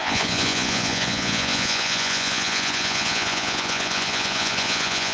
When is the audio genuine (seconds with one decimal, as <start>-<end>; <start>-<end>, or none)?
none